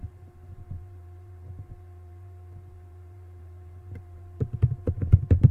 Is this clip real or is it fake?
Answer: fake